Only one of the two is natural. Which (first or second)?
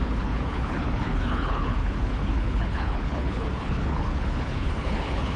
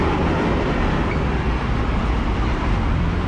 second